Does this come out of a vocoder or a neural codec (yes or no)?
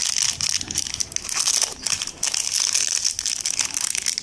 no